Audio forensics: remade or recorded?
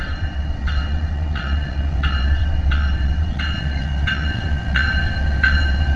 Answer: remade